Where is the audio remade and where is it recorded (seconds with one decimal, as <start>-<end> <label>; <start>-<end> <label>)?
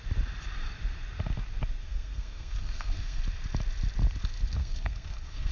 0.0-1.8 recorded; 1.8-3.2 remade; 3.2-4.6 recorded; 4.6-5.5 remade